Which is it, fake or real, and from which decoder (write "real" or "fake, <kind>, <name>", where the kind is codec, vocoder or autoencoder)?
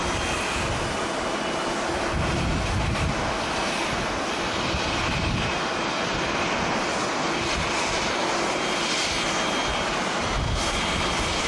real